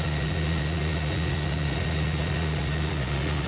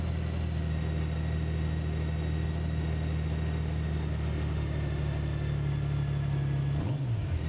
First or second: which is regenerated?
first